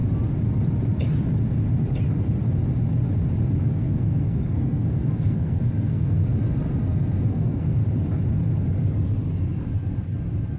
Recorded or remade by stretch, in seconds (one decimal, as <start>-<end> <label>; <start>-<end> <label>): 0.0-3.6 recorded; 3.6-6.2 remade; 6.2-7.3 recorded; 7.3-7.8 remade; 7.8-10.6 recorded